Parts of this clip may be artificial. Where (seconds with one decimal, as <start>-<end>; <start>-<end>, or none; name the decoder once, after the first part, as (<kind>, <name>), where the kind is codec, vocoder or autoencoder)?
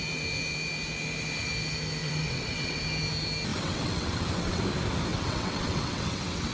2.0-2.8 (vocoder, WaveNeXt); 3.5-4.6; 5.1-6.5